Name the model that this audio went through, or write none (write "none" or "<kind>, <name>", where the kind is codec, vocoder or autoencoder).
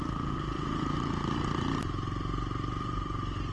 none